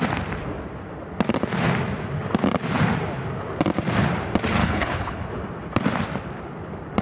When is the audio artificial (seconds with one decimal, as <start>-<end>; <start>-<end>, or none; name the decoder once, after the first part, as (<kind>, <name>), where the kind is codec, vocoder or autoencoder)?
4.6-5.3 (codec, HILCodec)